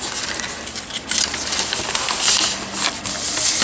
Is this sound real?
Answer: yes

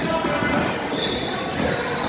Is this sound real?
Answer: yes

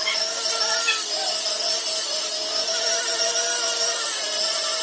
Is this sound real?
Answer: yes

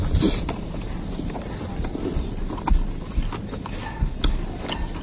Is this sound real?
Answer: yes